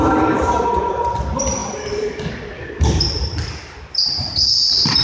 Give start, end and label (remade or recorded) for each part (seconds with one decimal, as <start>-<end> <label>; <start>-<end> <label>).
0.0-5.0 recorded